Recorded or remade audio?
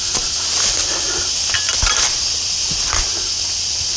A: recorded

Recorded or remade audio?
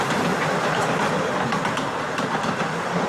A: recorded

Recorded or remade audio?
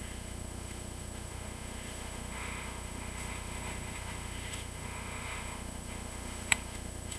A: remade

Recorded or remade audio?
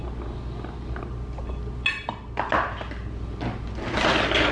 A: recorded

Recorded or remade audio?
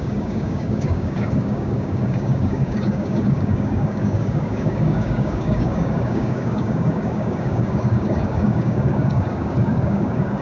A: remade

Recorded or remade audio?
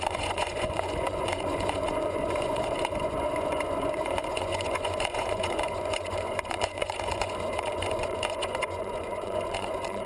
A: remade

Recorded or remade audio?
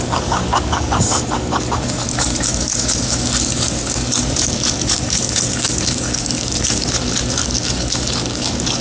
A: remade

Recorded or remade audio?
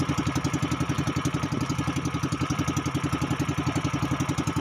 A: recorded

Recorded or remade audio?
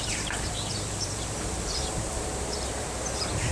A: remade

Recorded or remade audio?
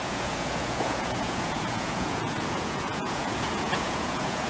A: remade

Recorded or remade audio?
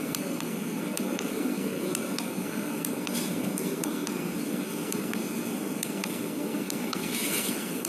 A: remade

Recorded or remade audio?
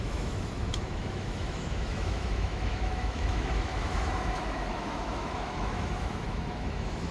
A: remade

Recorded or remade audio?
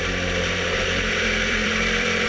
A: remade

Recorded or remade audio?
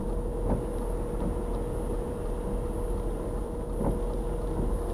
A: recorded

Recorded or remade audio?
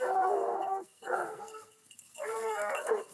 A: remade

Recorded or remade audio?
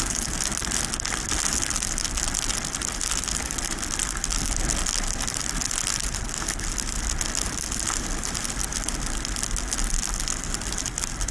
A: recorded